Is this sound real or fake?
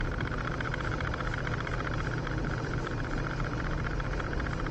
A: fake